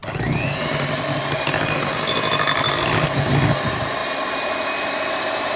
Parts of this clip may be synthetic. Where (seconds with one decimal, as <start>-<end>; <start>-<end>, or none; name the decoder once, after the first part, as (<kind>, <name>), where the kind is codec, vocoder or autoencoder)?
none